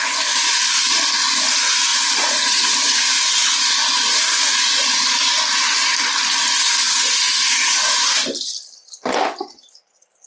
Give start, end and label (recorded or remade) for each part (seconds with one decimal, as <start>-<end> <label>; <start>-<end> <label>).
0.0-1.9 recorded; 1.9-3.7 remade; 3.7-10.3 recorded